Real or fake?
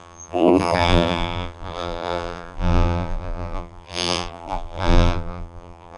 fake